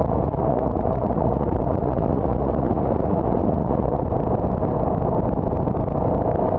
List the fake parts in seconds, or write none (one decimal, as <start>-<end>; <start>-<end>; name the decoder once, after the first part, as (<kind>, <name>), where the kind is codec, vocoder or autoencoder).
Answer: 0.0-4.0 (vocoder, Vocos)